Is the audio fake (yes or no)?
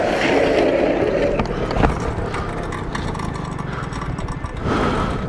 no